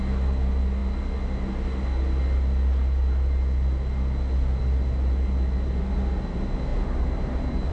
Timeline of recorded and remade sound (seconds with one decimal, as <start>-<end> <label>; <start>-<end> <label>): 0.0-7.7 recorded